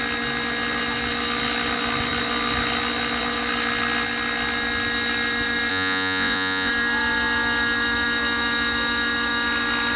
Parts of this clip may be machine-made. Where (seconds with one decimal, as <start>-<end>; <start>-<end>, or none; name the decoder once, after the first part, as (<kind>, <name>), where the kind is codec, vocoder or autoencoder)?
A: 5.7-6.7 (vocoder, Vocos)